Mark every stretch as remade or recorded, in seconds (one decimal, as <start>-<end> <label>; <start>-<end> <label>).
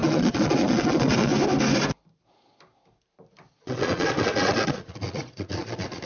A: 0.0-1.3 remade; 1.3-3.5 recorded; 3.5-6.1 remade